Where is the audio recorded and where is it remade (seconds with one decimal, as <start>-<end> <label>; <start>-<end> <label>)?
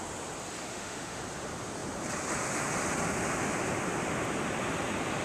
0.0-0.7 recorded; 0.7-1.2 remade; 1.2-5.2 recorded